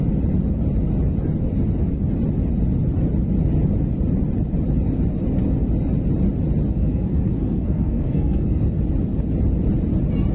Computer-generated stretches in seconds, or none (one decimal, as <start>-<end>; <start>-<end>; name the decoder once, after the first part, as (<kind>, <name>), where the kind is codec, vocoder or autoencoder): 6.8-8.6 (codec, SNAC)